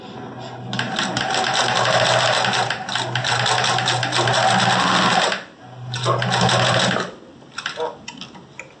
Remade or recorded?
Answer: recorded